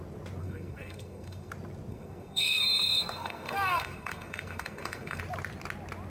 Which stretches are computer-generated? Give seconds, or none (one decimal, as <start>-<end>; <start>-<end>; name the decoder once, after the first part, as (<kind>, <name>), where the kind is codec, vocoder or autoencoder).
0.4-1.5 (codec, SNAC); 1.9-5.2